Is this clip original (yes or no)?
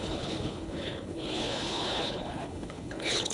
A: no